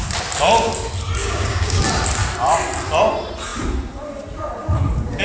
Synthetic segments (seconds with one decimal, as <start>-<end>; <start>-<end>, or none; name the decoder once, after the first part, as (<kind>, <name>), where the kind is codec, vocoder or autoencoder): 1.2-1.8 (codec, DAC)